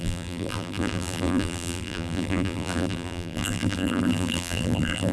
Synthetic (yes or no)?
yes